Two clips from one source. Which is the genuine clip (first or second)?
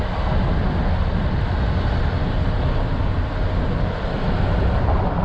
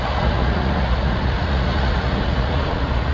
first